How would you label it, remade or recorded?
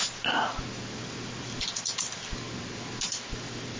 recorded